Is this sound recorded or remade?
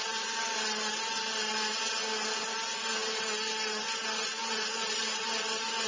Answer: recorded